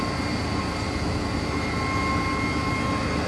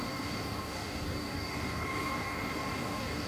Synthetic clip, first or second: second